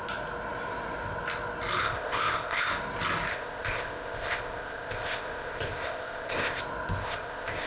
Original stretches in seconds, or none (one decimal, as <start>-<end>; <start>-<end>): 0.0-1.8; 2.7-3.3; 6.6-7.0